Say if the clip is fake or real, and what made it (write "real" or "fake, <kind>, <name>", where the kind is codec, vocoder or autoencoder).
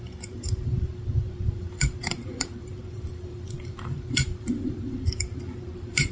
fake, vocoder, BigVGAN v2